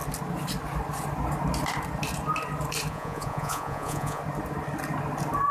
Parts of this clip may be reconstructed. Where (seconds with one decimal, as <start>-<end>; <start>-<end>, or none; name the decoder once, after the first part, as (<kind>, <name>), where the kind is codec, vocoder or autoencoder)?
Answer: 2.9-4.2 (vocoder, Vocos)